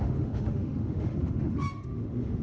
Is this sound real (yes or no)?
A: no